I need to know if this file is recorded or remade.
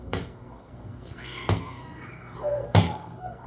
remade